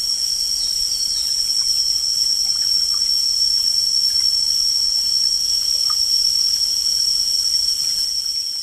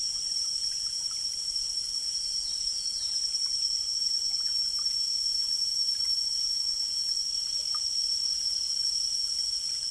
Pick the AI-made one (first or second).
second